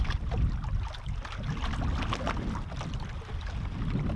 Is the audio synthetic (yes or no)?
no